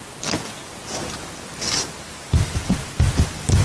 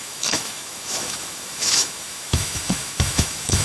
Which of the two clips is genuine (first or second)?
first